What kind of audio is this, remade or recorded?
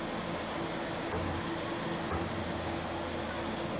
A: recorded